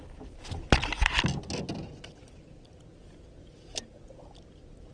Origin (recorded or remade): recorded